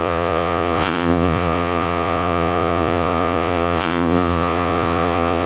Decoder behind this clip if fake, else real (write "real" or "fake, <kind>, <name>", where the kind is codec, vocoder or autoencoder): fake, vocoder, Vocos